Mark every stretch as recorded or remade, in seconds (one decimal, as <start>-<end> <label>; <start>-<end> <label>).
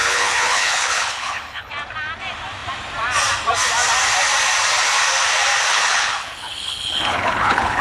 0.0-1.7 remade; 1.7-5.7 recorded; 5.7-7.8 remade